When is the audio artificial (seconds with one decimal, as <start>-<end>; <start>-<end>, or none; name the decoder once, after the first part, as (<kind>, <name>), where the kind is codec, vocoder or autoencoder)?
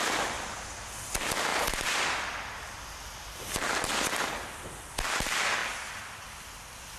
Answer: none